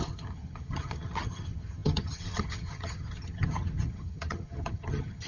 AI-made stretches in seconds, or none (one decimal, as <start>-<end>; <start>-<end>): 0.0-5.3